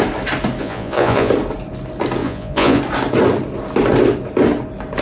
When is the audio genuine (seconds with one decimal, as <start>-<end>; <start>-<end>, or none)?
0.0-0.6; 1.3-2.2; 2.8-5.0